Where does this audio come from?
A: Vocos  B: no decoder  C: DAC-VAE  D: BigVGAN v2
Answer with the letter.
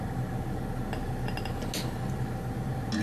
B